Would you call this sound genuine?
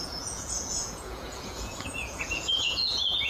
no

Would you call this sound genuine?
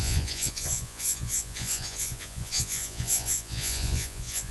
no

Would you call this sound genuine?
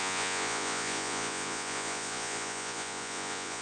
no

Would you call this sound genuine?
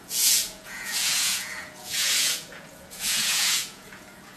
no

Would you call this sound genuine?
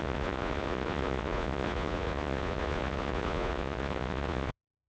no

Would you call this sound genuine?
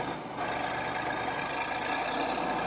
yes